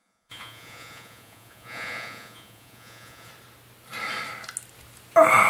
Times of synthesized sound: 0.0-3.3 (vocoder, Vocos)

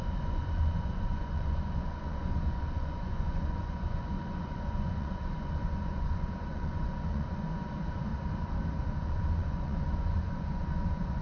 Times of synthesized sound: 0.0-8.1 (vocoder, Vocos); 9.0-11.2

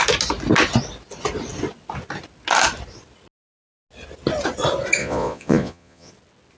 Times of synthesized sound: 5.0-6.1 (vocoder, Vocos)

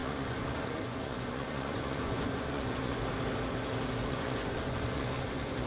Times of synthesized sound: 0.0-3.0 (vocoder, Vocos); 4.0-5.7

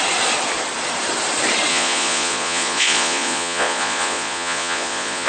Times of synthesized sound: 1.7-5.3 (vocoder, Vocos)